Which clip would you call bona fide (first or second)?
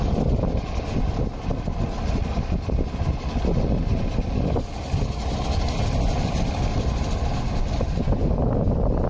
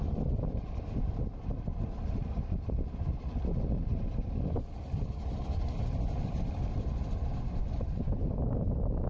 first